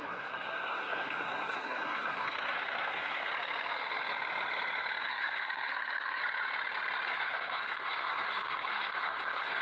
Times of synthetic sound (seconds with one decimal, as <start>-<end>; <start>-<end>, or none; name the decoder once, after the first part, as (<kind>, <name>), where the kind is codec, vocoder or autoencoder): 0.0-3.3 (codec, SNAC); 5.0-6.2; 7.1-9.6

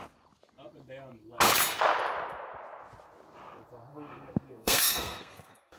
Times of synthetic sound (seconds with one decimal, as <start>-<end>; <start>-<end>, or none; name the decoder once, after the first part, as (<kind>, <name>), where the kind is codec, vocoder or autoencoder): 3.9-5.8 (codec, SNAC)

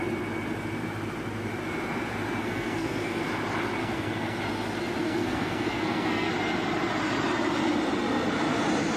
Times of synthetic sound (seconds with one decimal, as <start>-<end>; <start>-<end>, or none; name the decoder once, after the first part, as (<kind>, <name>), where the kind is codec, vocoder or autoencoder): 2.4-3.2 (codec, SNAC); 3.8-4.4; 5.0-6.3

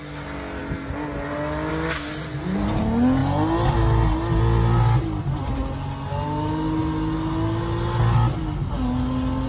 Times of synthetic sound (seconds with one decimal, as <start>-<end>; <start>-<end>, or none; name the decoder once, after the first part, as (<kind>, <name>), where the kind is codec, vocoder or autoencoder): none

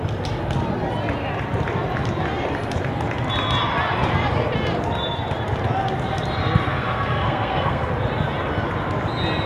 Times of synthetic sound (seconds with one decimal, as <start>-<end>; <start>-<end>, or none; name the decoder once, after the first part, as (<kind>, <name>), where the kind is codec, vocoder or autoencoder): 6.7-7.9 (codec, SNAC)

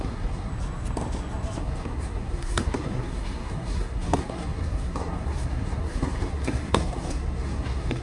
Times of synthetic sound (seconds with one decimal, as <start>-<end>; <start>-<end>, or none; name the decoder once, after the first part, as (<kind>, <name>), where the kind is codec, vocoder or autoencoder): 0.0-0.5 (codec, SNAC); 1.6-8.0

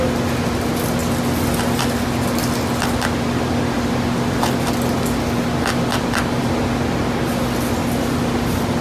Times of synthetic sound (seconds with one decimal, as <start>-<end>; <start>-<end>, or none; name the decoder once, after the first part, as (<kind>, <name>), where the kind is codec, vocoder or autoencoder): none